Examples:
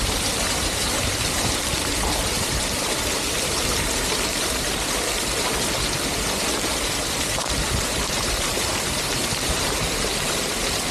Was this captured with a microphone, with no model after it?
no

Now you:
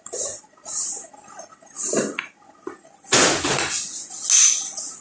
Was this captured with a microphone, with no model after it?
yes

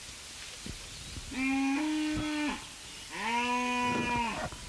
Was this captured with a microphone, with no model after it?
yes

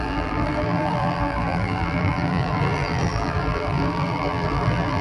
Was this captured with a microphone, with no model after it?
no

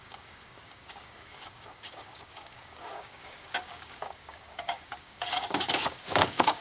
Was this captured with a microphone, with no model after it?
no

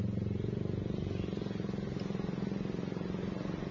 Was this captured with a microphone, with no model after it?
yes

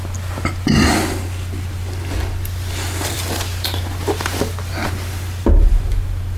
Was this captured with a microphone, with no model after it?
no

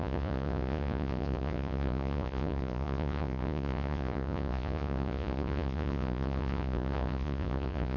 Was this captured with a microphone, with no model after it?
no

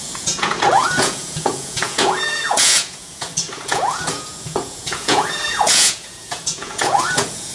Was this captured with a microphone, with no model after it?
no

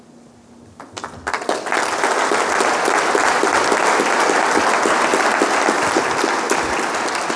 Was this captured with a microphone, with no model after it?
yes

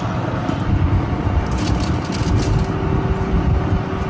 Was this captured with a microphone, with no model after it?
yes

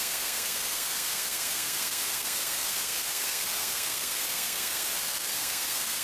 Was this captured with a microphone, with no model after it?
no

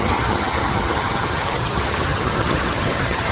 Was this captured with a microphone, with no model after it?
no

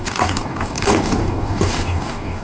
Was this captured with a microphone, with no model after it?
no